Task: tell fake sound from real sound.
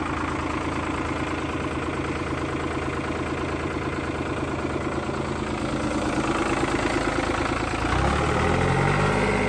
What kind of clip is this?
real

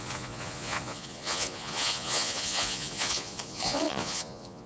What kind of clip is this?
fake